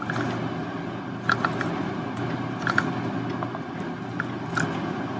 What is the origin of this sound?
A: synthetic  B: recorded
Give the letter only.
B